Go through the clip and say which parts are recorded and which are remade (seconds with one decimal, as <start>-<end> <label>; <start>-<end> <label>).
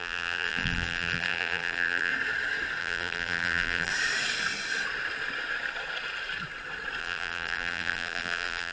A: 0.0-2.1 remade; 2.1-2.8 recorded; 2.8-3.9 remade; 3.9-7.0 recorded; 7.0-8.7 remade